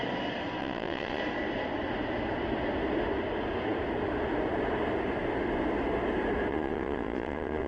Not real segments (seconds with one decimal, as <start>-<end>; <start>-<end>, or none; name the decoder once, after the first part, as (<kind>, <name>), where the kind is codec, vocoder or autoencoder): 0.6-1.2 (vocoder, Vocos); 6.5-7.7